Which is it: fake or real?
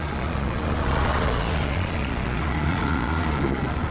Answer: fake